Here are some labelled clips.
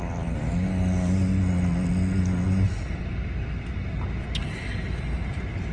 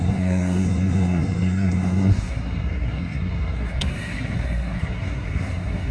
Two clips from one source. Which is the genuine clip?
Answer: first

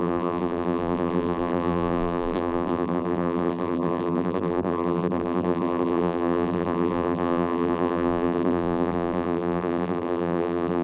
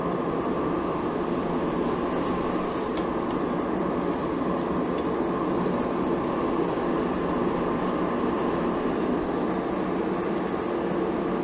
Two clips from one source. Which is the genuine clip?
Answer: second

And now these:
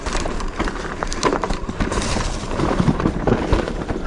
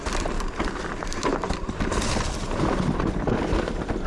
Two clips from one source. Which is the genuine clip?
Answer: second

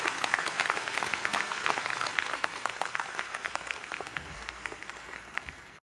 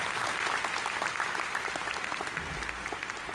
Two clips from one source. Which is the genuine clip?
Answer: second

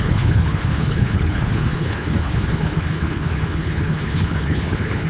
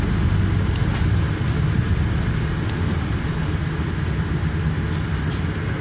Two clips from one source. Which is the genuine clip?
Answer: second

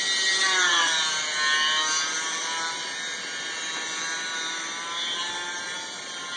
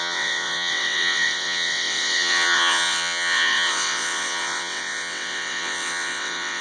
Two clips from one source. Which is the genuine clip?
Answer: first